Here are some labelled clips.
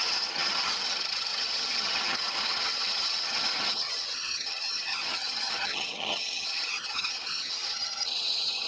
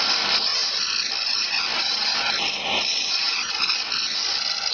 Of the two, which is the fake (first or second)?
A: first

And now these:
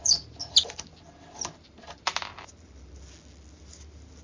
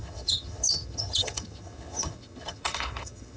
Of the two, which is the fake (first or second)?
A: second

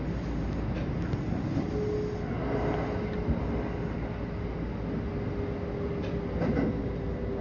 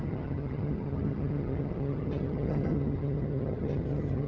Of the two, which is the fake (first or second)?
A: second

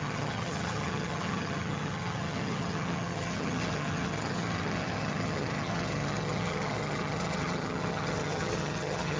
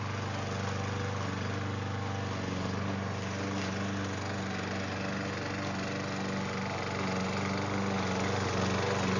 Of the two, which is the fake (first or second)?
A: first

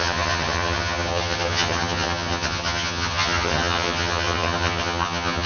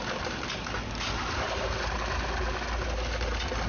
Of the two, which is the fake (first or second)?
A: first